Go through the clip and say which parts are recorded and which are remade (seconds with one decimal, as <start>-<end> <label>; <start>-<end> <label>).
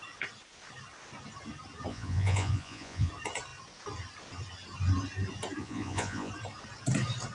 0.0-1.9 recorded; 1.9-3.1 remade; 3.1-5.6 recorded; 5.6-6.3 remade; 6.3-7.3 recorded